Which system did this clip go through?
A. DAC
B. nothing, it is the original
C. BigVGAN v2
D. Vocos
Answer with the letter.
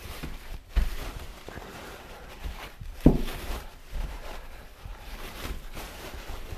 C